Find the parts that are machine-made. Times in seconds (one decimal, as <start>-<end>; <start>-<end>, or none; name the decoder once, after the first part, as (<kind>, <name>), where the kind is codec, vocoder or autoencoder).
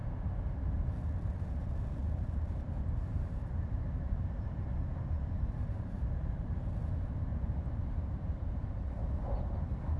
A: 2.0-6.7 (vocoder, BigVGAN v2); 7.3-8.9